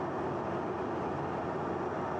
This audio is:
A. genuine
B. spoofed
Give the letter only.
A